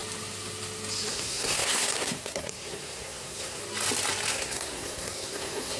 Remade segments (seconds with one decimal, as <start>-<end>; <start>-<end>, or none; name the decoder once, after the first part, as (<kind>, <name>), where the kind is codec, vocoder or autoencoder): 1.1-3.6 (codec, SNAC); 4.3-5.8